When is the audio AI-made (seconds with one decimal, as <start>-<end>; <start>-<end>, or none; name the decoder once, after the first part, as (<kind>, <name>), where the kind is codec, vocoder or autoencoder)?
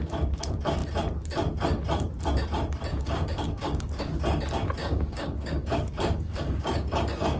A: 2.9-3.9 (codec, DAC); 4.8-7.4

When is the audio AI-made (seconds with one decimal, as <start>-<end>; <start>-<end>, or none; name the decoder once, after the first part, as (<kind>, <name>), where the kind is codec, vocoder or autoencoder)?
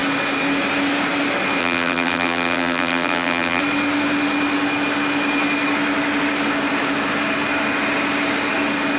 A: 1.6-3.6 (vocoder, BigVGAN v2)